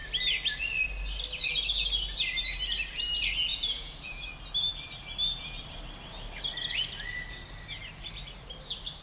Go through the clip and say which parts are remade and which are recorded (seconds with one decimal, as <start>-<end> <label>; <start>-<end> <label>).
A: 0.0-3.5 recorded; 3.5-4.3 remade; 4.3-9.0 recorded